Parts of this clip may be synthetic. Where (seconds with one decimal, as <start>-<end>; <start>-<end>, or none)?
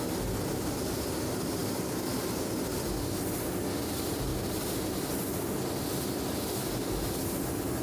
none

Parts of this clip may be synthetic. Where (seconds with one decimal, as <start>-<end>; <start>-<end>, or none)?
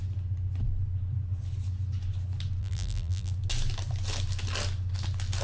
2.6-3.3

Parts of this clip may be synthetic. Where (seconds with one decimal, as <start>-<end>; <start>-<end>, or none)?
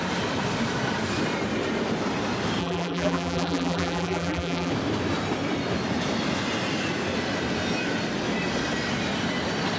2.6-4.7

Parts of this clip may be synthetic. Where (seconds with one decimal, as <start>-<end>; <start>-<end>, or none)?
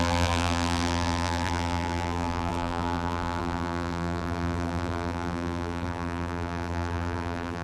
0.0-7.6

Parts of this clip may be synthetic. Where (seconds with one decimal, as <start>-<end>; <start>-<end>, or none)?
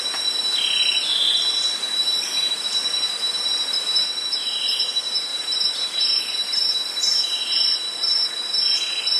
5.3-6.0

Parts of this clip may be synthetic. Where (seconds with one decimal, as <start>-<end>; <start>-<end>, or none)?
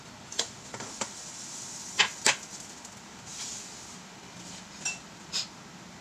3.3-5.6